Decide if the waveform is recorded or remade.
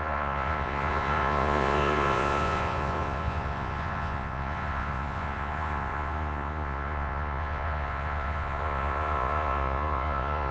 remade